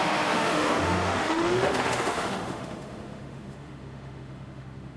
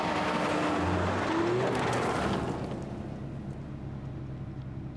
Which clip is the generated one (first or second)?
first